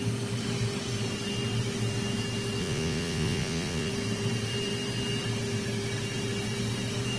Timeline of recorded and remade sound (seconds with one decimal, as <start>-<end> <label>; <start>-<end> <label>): 0.0-2.6 recorded; 2.6-3.9 remade; 3.9-7.2 recorded